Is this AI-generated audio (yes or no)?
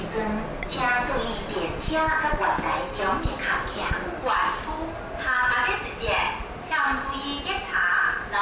no